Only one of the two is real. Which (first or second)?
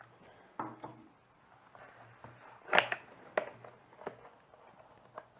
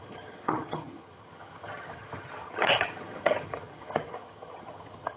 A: first